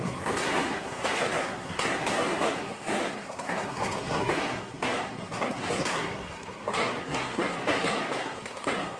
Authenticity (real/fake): fake